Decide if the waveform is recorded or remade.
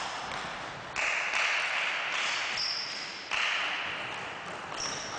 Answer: recorded